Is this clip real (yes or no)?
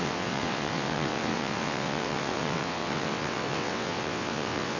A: no